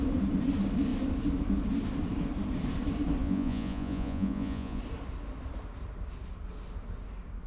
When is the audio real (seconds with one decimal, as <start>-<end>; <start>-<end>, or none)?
0.0-3.2; 4.8-7.5